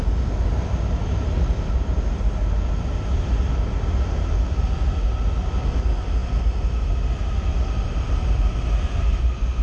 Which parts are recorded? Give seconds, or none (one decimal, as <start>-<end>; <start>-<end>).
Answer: 0.0-9.6